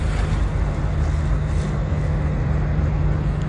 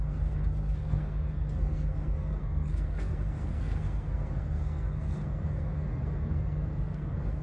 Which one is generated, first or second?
second